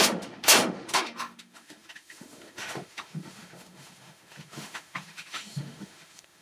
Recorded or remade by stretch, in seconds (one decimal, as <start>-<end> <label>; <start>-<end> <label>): 0.0-6.4 remade